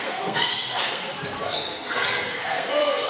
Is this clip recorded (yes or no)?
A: no